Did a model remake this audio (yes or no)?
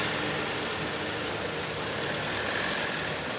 no